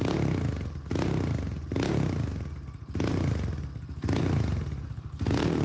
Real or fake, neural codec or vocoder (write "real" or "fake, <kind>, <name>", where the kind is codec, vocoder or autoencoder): real